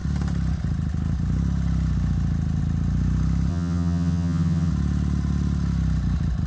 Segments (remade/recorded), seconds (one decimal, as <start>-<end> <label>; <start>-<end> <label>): 0.0-3.5 recorded; 3.5-4.7 remade; 4.7-6.5 recorded